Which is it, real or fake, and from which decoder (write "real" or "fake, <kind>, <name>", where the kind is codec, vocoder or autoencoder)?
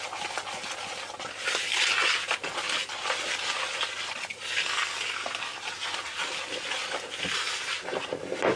real